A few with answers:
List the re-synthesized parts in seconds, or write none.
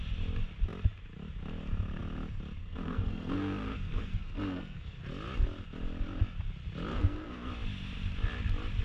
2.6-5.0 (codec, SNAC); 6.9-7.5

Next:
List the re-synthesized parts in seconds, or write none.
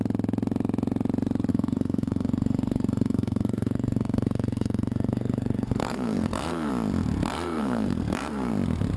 1.5-6.7 (codec, SNAC); 7.3-8.5